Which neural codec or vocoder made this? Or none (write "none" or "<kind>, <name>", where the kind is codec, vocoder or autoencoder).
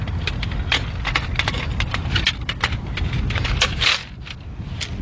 none